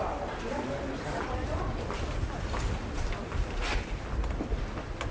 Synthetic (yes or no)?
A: no